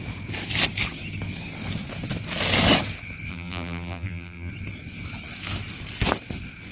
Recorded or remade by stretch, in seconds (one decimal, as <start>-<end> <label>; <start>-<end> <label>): 0.0-3.3 recorded; 3.3-4.5 remade; 4.5-6.7 recorded